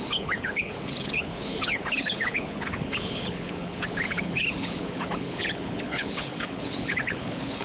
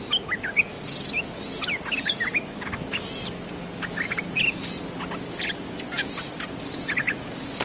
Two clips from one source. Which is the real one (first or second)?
second